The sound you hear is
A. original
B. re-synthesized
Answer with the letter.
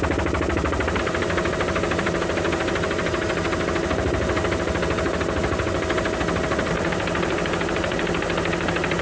A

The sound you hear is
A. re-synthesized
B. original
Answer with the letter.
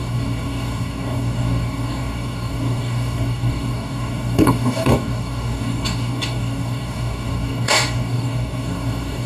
A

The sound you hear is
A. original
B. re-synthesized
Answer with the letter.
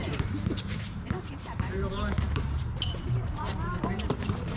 B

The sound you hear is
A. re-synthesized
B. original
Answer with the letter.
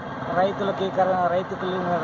B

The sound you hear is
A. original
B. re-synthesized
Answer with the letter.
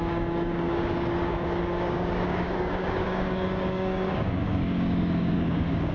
B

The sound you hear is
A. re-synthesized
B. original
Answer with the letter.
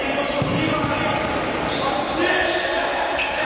B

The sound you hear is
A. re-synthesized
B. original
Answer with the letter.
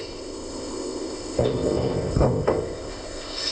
A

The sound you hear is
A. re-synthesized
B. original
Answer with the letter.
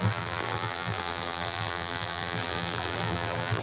A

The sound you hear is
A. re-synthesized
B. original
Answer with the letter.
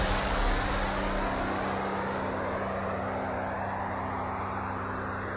B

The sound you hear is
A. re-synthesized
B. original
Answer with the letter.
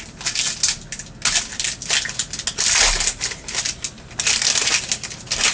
B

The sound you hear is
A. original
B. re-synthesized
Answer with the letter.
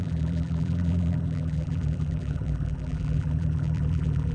B